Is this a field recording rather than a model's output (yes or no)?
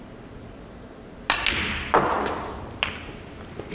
yes